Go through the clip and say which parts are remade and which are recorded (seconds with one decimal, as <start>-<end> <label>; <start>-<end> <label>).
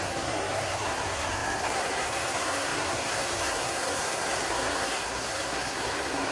0.0-6.3 remade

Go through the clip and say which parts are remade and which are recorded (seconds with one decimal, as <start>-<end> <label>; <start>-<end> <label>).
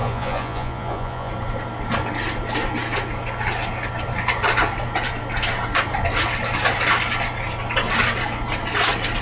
0.0-1.3 remade; 1.3-9.2 recorded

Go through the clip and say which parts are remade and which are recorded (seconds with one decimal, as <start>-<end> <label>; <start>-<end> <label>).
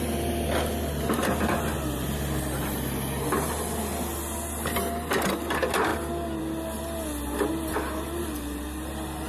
0.0-9.3 recorded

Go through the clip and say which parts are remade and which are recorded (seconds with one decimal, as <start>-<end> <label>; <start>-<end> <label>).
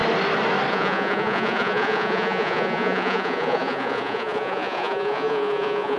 0.0-0.7 recorded; 0.7-6.0 remade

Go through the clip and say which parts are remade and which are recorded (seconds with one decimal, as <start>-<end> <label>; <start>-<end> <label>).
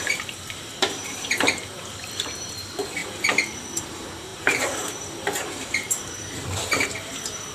0.0-3.0 remade; 3.0-3.8 recorded; 3.8-7.5 remade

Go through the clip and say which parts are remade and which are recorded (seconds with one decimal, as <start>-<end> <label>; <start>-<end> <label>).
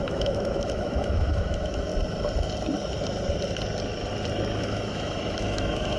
0.0-1.9 remade; 1.9-4.6 recorded; 4.6-6.0 remade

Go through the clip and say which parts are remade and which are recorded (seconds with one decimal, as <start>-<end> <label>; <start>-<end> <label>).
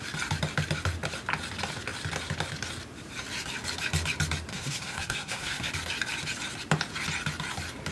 0.0-4.5 recorded; 4.5-5.7 remade; 5.7-7.9 recorded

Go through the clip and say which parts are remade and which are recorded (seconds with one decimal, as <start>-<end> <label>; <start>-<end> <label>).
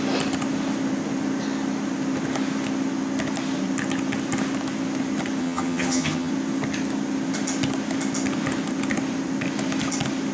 0.0-5.4 recorded; 5.4-6.3 remade; 6.3-10.3 recorded